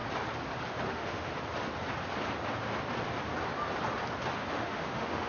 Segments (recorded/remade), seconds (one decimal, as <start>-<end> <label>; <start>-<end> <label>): 0.0-0.9 recorded; 0.9-1.3 remade; 1.3-4.5 recorded; 4.5-5.3 remade